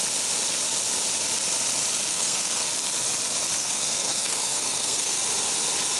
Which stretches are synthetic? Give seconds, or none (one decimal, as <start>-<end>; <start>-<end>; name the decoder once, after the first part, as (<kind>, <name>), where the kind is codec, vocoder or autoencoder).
2.1-2.7 (codec, SNAC); 3.6-5.2